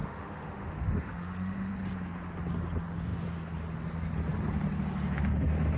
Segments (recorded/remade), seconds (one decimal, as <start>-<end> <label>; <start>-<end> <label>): 0.0-1.7 remade; 1.7-5.8 recorded